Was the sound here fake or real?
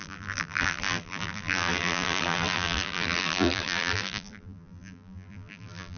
fake